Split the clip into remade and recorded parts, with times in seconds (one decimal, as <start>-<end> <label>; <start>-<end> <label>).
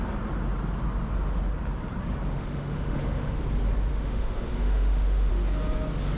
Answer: 0.0-2.3 recorded; 2.3-3.4 remade; 3.4-3.9 recorded; 3.9-5.3 remade; 5.3-6.2 recorded